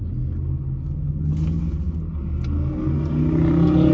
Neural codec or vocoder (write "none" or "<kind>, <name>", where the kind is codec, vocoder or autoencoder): none